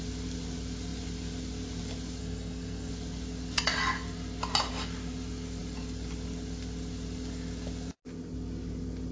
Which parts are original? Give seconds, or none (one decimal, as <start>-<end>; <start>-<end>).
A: 0.0-2.2; 2.9-9.1